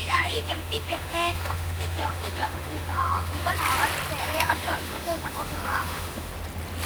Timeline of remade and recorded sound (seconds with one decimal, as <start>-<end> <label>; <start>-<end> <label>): 0.0-3.5 remade; 3.5-4.2 recorded; 4.2-6.3 remade; 6.3-6.9 recorded